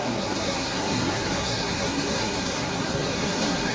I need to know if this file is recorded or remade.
remade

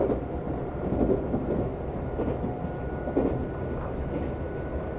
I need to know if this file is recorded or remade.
recorded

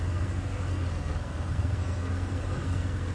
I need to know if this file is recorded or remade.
remade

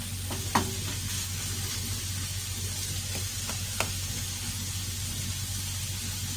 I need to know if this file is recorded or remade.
recorded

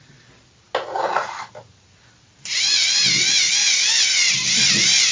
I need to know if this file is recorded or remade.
recorded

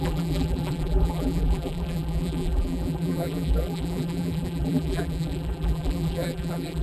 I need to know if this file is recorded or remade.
remade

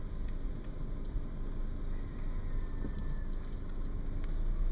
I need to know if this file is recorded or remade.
recorded